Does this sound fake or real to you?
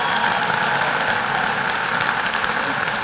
real